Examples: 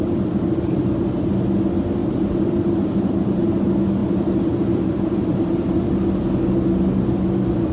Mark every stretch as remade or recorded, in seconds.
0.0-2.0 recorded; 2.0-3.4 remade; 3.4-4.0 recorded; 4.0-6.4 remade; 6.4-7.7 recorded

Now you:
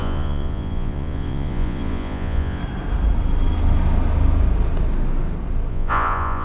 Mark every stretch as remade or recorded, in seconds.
0.0-2.6 remade; 2.6-5.7 recorded; 5.7-6.4 remade

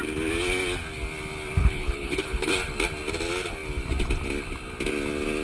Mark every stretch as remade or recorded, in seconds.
0.0-1.6 recorded; 1.6-2.5 remade; 2.5-5.4 recorded

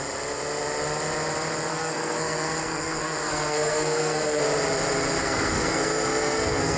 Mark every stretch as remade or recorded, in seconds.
0.0-1.7 recorded; 1.7-4.4 remade; 4.4-5.2 recorded; 5.2-6.8 remade

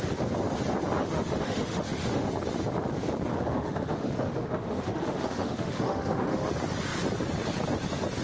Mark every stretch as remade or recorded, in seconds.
0.0-1.0 recorded; 1.0-2.3 remade; 2.3-3.3 recorded; 3.3-6.5 remade; 6.5-8.2 recorded

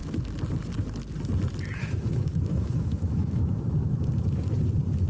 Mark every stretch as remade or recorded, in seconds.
0.0-1.8 recorded; 1.8-4.1 remade; 4.1-5.1 recorded

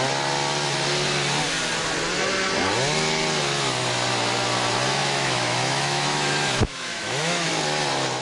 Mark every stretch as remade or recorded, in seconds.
0.0-5.0 recorded; 5.0-7.5 remade; 7.5-8.2 recorded